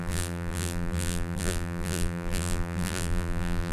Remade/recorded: remade